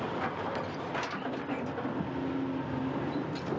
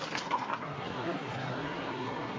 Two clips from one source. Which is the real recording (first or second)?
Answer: first